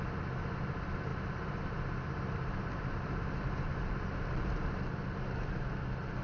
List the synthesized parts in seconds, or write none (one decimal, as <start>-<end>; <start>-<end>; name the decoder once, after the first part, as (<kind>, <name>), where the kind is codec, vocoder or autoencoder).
none

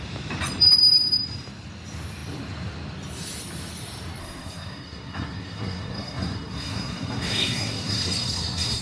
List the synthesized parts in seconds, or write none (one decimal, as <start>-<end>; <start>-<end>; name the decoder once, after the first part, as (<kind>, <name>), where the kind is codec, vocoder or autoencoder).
4.2-8.8 (codec, SNAC)

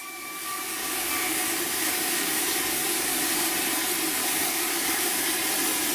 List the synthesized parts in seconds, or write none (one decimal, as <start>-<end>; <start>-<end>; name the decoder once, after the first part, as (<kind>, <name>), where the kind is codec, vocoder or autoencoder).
0.0-3.5 (codec, DAC); 4.2-5.3

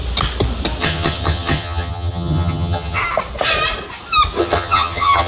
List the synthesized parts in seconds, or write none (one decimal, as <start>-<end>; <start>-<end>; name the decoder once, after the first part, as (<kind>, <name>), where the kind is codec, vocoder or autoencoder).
0.8-3.0 (vocoder, HiFi-GAN); 4.4-5.3

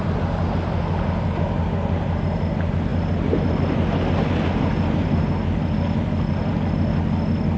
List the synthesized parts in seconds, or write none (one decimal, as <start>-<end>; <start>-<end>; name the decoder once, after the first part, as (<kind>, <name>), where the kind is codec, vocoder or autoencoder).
none

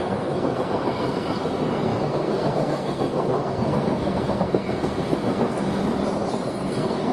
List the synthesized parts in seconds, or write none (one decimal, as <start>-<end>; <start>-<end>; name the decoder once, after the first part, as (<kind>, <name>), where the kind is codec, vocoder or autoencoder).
0.0-5.8 (codec, SNAC); 6.3-7.1

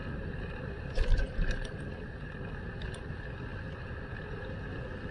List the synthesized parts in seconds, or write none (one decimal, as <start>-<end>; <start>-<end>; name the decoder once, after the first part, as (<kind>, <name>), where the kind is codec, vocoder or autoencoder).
0.0-3.1 (vocoder, BigVGAN v2); 3.5-4.5

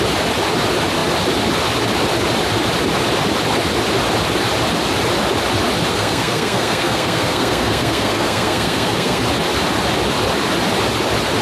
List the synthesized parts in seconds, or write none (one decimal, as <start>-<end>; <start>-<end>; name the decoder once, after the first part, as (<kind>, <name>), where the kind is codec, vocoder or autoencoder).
5.9-9.2 (codec, SNAC)